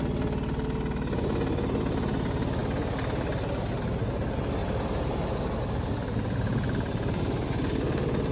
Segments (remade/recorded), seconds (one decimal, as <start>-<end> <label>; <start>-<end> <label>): 0.0-4.6 recorded; 4.6-8.3 remade